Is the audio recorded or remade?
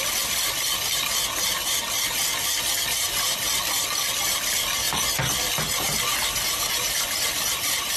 recorded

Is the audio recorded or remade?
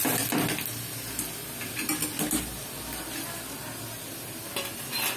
recorded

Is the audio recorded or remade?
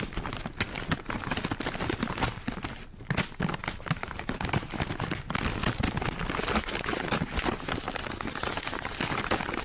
recorded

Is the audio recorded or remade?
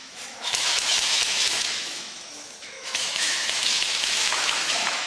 remade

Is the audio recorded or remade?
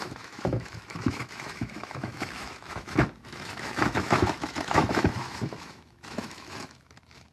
remade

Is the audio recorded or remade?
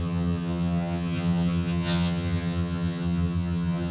remade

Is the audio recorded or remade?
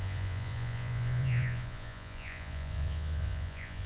remade